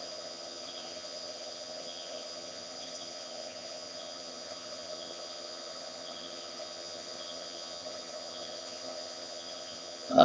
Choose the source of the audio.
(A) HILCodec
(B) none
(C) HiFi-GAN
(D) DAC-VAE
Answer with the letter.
C